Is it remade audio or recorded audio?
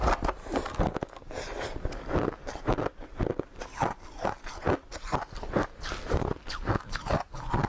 recorded